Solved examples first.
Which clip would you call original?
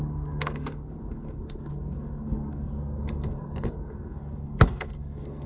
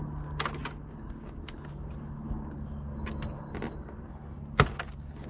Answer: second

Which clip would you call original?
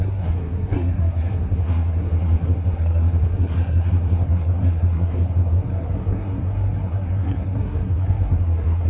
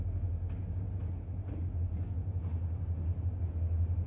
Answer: second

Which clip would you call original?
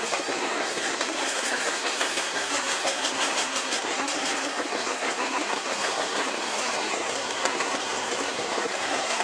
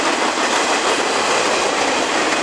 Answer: second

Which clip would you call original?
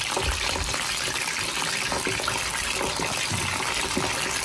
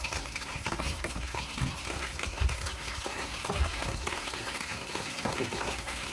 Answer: first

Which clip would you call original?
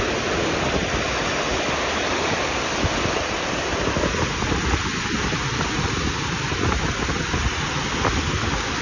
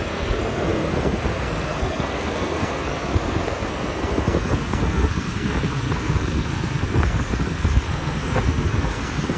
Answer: first